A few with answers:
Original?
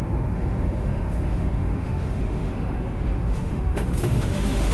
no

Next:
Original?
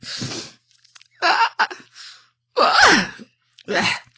yes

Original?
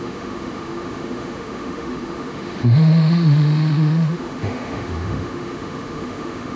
no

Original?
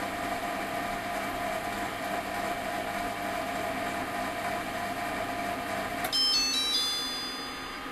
yes